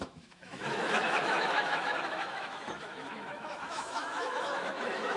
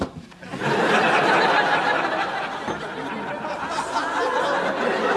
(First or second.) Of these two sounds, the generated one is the first